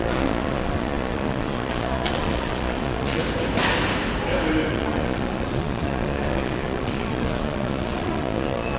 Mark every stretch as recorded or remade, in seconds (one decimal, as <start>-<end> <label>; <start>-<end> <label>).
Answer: 0.0-3.2 remade; 3.2-4.7 recorded; 4.7-8.8 remade